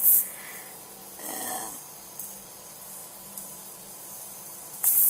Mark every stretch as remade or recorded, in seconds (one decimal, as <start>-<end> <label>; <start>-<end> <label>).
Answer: 0.0-5.1 recorded

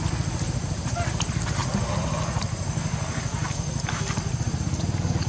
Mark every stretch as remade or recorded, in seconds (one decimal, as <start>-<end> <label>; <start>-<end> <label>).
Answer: 0.0-5.3 recorded

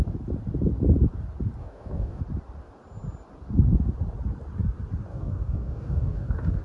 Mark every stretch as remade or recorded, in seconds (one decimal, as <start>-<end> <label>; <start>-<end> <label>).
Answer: 0.0-1.6 recorded; 1.6-2.2 remade; 2.2-5.1 recorded; 5.1-6.6 remade